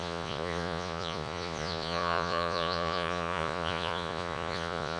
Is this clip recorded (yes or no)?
no